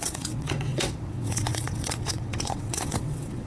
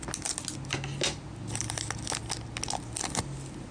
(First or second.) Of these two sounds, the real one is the second